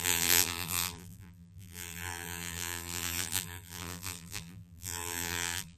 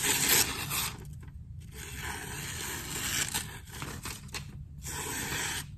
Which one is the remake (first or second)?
first